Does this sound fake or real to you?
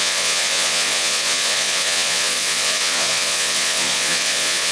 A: fake